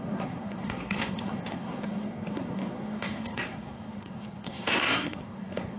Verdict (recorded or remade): remade